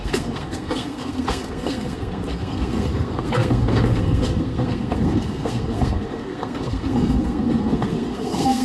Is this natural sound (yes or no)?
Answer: no